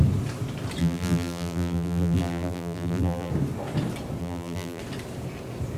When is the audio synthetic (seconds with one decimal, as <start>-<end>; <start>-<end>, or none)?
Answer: 0.8-3.3; 4.2-4.8